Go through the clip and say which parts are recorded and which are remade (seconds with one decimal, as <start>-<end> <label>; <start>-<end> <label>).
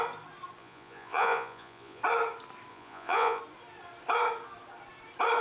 0.0-0.6 recorded; 0.6-2.0 remade; 2.0-2.7 recorded; 2.7-3.4 remade; 3.4-5.4 recorded